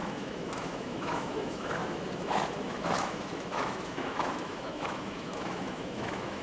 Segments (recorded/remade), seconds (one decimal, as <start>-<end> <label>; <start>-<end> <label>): 0.0-6.4 remade